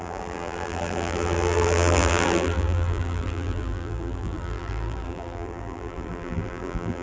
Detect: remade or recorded remade